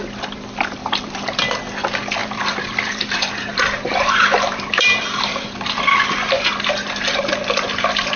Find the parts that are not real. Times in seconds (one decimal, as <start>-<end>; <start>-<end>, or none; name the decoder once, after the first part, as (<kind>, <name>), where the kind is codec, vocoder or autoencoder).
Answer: 0.8-1.4 (vocoder, BigVGAN v2); 2.2-6.5